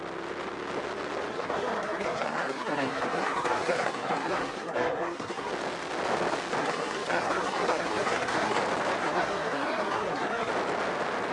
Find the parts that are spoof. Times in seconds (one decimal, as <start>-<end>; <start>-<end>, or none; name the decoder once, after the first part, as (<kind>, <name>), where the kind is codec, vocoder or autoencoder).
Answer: 1.3-5.5 (codec, SNAC); 6.6-8.6; 9.0-10.5